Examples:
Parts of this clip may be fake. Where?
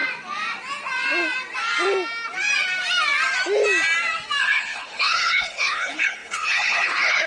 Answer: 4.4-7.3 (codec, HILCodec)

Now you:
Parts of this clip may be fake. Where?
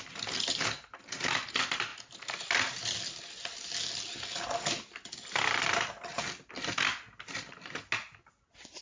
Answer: none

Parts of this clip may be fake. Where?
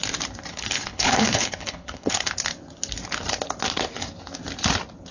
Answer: 0.5-2.3 (codec, HILCodec)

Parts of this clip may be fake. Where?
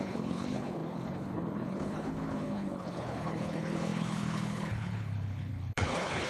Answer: 0.0-6.3 (codec, HILCodec)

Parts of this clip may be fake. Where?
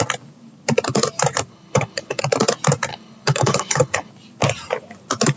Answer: 1.5-2.2 (codec, HILCodec); 2.9-4.1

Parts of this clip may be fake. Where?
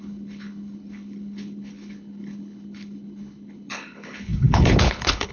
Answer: 0.0-5.3 (codec, HILCodec)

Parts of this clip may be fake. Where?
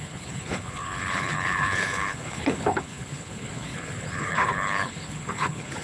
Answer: 0.0-5.8 (codec, HILCodec)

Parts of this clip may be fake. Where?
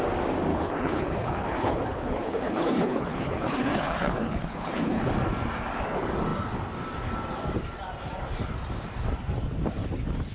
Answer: 0.5-5.1 (codec, HILCodec)